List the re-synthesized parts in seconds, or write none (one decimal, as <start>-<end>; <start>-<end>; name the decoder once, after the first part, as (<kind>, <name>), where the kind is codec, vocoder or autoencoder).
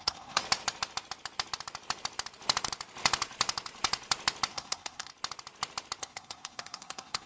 0.0-0.4 (codec, SNAC); 4.5-5.1; 6.0-7.3